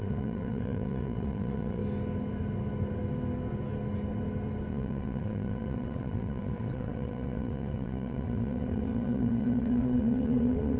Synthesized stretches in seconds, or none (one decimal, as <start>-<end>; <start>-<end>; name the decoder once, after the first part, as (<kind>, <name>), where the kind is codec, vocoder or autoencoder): 0.0-1.8 (vocoder, WaveNeXt); 4.7-10.8